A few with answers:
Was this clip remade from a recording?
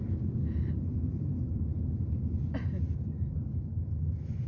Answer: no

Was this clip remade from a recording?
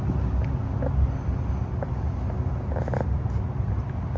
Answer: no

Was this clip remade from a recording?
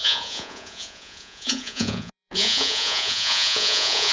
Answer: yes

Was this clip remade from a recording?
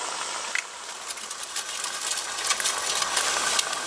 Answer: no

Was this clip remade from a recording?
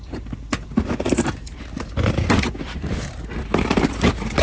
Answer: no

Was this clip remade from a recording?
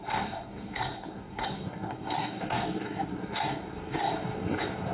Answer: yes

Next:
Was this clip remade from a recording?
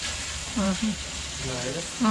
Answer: yes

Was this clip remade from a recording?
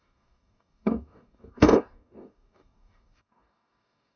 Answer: yes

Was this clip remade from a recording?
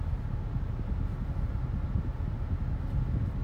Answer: no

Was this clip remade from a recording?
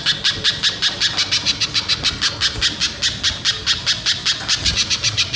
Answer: no